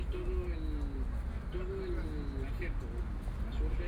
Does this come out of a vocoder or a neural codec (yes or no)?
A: no